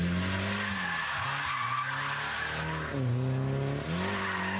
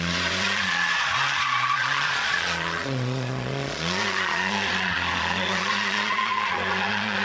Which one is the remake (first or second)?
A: second